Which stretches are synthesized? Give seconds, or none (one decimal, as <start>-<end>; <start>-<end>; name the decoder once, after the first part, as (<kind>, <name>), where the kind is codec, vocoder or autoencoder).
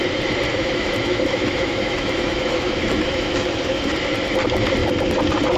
0.5-3.9 (autoencoder, DAC-VAE)